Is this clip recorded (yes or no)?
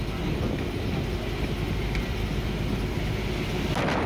yes